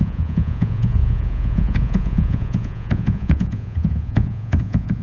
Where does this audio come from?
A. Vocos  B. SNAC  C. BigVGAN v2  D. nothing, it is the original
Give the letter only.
A